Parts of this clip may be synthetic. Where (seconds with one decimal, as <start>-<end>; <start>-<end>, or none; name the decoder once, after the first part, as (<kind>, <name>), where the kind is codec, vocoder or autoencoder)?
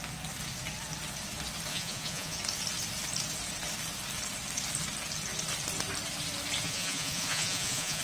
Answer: 1.7-2.4 (vocoder, Vocos); 6.6-8.0